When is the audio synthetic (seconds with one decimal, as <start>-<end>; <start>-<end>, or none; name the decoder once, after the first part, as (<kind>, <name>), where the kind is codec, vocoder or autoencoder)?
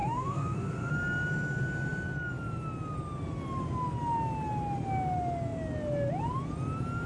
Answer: 0.0-0.9 (codec, SNAC)